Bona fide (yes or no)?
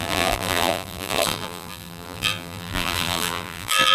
no